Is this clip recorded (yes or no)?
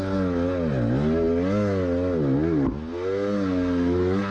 yes